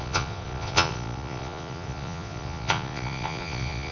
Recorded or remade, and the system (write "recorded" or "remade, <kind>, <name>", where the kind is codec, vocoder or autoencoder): remade, vocoder, Vocos